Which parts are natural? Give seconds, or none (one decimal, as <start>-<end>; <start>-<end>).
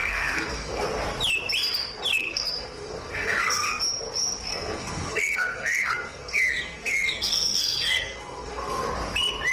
0.8-2.1; 3.8-4.5; 8.9-9.5